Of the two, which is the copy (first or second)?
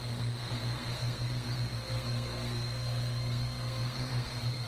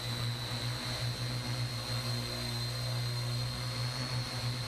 first